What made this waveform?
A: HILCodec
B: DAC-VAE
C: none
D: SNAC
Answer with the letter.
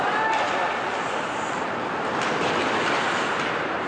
C